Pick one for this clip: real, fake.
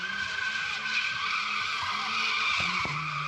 real